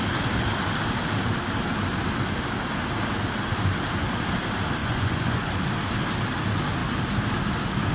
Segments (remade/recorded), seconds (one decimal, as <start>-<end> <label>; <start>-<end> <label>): 0.0-4.8 recorded; 4.8-5.5 remade; 5.5-7.9 recorded